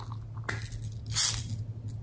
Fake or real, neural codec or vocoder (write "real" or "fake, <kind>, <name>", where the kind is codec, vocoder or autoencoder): real